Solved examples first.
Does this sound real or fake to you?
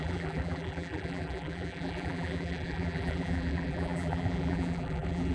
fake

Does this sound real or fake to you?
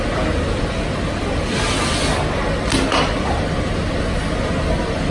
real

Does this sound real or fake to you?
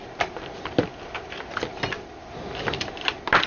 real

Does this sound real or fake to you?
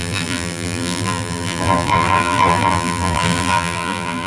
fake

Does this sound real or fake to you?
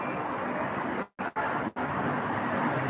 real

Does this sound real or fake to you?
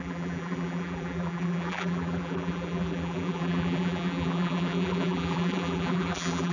fake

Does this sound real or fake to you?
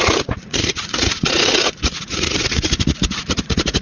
fake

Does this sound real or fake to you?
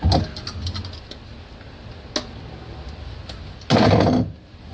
real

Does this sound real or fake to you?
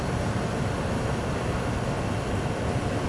real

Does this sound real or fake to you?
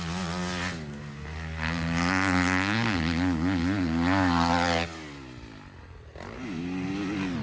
real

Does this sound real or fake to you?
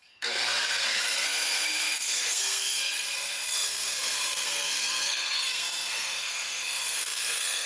fake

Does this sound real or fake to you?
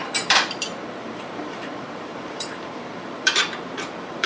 fake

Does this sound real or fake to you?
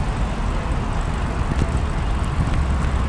real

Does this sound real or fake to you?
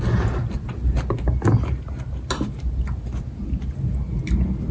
real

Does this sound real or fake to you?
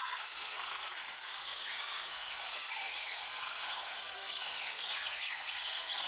fake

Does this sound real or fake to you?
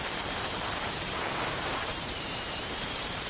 fake